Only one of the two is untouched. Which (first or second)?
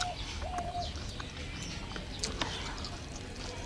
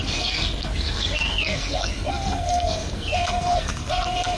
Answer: first